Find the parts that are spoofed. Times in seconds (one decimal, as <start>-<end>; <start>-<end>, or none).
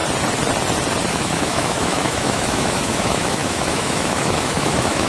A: 1.1-5.1